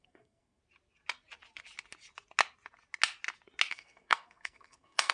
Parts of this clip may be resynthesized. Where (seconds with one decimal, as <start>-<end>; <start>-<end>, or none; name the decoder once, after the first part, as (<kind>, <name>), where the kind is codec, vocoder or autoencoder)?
0.0-0.6 (codec, SNAC); 3.7-5.1